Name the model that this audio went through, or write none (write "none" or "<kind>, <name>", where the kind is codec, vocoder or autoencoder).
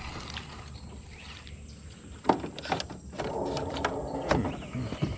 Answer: none